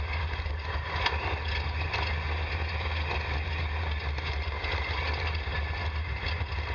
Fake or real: real